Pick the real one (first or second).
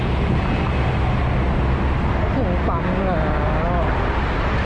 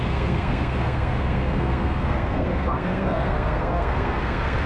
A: first